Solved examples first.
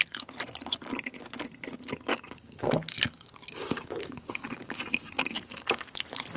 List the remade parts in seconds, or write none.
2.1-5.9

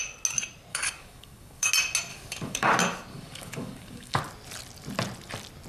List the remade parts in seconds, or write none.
0.7-1.7; 2.1-2.7; 3.1-4.2

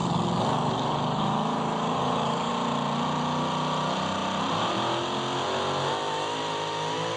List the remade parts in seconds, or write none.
0.0-2.5